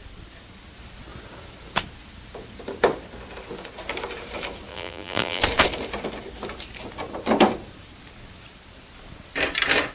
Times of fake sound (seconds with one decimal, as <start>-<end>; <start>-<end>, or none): 4.7-5.4